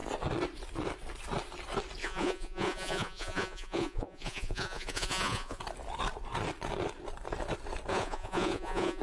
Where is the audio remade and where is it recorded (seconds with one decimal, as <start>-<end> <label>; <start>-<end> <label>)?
0.0-2.0 recorded; 2.0-5.6 remade; 5.6-7.9 recorded; 7.9-9.0 remade